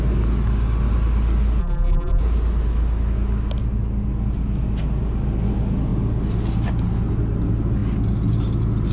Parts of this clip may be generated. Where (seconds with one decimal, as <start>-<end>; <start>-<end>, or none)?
1.6-2.2